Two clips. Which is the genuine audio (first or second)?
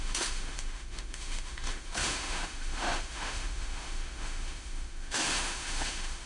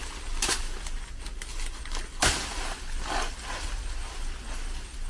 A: second